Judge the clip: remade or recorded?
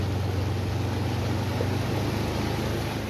recorded